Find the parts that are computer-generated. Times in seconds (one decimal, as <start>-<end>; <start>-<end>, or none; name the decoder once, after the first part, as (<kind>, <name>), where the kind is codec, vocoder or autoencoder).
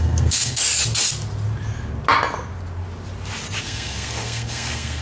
0.0-0.6 (codec, SNAC); 3.6-5.0